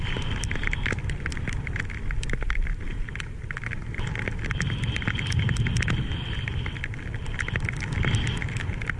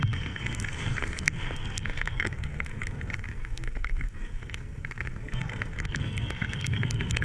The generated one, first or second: second